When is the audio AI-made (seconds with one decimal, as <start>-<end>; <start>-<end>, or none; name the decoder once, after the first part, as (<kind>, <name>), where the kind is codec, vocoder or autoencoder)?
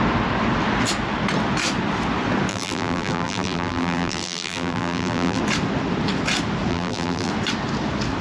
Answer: 2.5-5.4 (vocoder, BigVGAN v2); 6.7-7.3